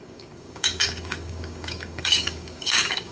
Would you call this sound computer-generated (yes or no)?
yes